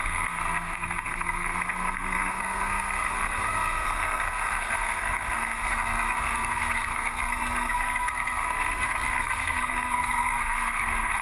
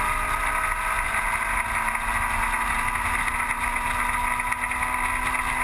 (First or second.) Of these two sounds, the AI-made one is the first